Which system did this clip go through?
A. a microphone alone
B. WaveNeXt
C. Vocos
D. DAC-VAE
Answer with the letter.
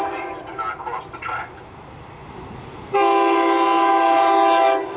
A